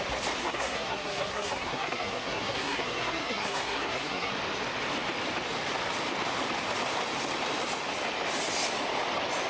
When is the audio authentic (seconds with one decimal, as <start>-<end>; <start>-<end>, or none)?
0.0-0.4; 4.3-9.5